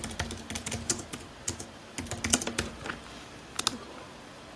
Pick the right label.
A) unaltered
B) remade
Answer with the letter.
A